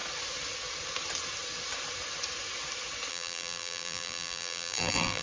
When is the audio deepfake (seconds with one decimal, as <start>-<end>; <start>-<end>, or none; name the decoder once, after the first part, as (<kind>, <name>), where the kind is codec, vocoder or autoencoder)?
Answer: 3.1-5.2 (vocoder, BigVGAN v2)